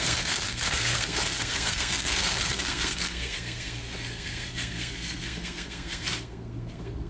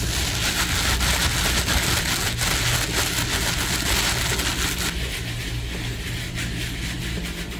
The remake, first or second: first